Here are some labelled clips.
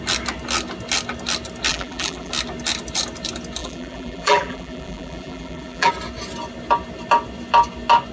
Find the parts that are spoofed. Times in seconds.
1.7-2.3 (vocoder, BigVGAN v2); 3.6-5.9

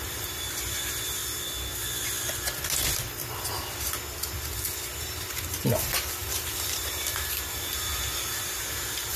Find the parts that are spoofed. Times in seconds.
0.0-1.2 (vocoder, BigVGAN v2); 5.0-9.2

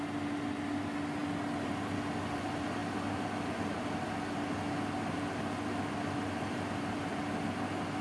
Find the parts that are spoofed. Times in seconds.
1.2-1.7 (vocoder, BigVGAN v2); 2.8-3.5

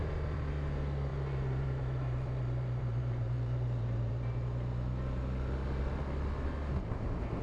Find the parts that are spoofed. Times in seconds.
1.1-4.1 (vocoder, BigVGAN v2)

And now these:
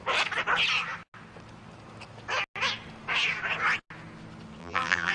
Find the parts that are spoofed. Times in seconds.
4.6-5.1 (vocoder, BigVGAN v2)

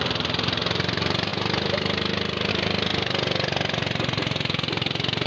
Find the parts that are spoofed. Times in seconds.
0.0-2.9 (vocoder, BigVGAN v2); 3.7-5.3

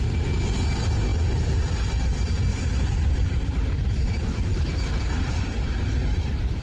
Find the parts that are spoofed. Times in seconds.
2.5-6.6 (vocoder, BigVGAN v2)